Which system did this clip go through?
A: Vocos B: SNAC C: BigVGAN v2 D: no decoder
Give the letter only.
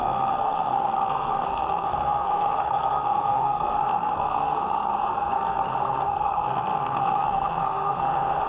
B